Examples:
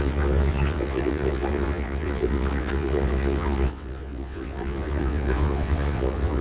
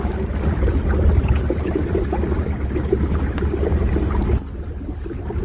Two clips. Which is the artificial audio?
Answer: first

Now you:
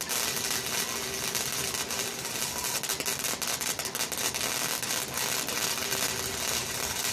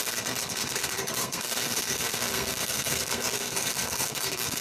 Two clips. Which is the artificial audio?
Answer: second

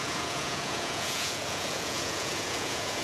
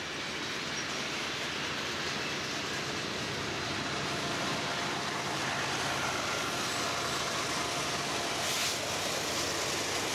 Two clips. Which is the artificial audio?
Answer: first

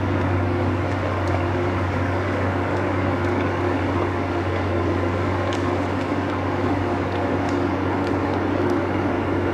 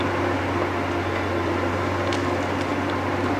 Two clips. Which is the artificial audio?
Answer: first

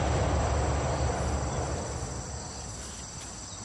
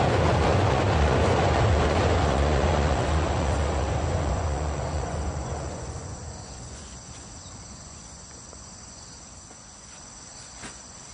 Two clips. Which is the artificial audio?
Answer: second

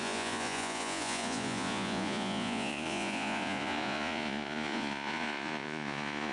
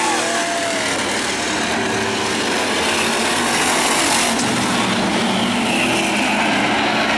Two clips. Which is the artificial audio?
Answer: first